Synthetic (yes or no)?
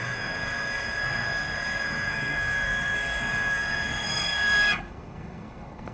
yes